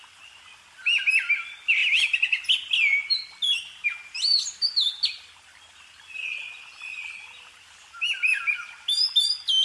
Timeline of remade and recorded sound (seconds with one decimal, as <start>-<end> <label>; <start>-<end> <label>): 0.0-9.6 recorded